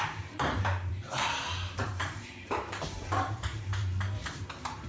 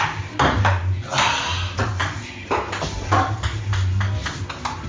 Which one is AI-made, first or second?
first